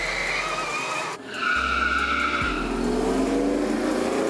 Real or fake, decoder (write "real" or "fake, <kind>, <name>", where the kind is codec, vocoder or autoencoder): real